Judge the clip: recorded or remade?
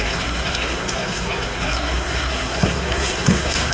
remade